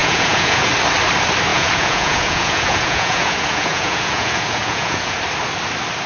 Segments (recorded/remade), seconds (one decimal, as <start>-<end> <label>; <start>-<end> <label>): 0.0-0.7 remade; 0.7-1.5 recorded; 1.5-5.2 remade; 5.2-6.1 recorded